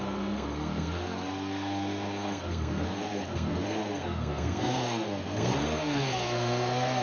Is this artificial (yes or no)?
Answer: yes